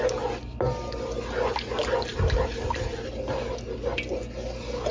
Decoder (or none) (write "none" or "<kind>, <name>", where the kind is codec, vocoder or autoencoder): none